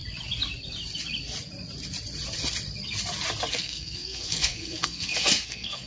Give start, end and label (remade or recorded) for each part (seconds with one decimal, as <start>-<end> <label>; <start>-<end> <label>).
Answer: 0.0-3.5 recorded; 3.5-5.9 remade